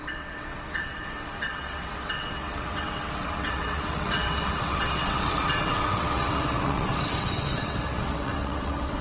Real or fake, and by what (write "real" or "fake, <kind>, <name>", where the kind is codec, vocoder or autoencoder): fake, vocoder, WaveNeXt